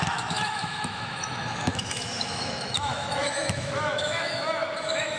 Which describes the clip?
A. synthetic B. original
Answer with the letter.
A